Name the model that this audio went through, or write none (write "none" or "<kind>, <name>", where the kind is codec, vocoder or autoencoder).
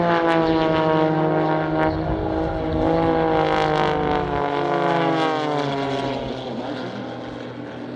none